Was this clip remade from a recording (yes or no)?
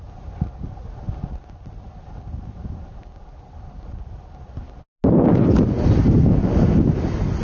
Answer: no